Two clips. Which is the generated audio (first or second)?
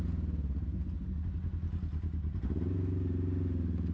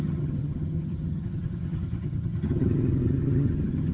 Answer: second